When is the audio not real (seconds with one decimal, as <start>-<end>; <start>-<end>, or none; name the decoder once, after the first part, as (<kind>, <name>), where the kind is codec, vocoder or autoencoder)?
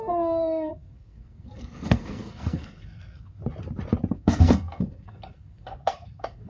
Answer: 0.0-3.4 (codec, SNAC); 4.1-6.5